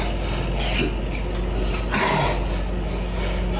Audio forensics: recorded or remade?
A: recorded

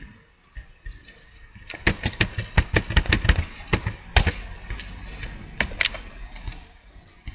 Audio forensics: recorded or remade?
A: recorded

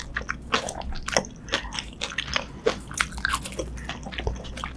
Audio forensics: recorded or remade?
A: recorded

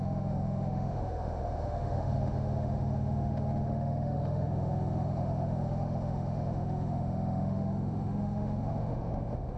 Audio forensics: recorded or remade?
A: remade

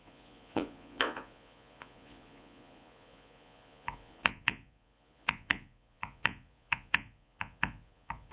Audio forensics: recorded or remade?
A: remade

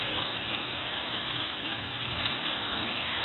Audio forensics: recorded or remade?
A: remade